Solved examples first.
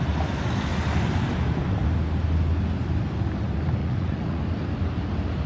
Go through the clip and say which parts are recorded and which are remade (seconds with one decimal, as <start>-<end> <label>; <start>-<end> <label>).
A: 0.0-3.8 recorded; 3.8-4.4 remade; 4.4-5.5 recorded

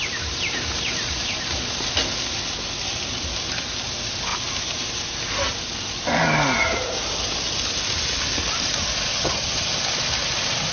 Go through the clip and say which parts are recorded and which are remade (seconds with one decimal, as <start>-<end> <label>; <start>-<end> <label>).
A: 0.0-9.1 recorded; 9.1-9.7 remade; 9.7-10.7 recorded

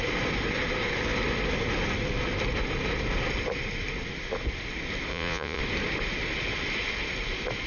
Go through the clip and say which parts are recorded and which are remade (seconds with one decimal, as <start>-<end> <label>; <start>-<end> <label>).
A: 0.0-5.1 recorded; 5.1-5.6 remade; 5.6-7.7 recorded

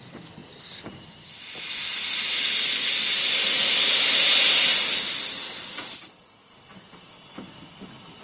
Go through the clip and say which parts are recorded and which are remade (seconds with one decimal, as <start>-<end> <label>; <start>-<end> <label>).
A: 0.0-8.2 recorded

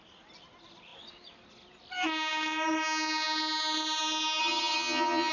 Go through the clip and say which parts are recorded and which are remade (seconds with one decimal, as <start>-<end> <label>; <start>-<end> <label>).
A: 0.0-4.4 recorded; 4.4-5.3 remade

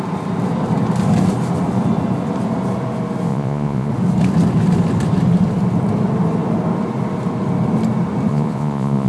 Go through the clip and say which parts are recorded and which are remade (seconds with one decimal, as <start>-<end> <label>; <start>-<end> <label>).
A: 0.0-3.3 recorded; 3.3-3.9 remade; 3.9-8.3 recorded; 8.3-9.1 remade

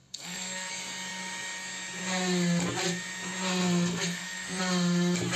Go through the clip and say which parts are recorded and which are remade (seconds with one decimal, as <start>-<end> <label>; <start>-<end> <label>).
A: 0.0-0.7 remade; 0.7-3.6 recorded; 3.6-4.6 remade; 4.6-5.4 recorded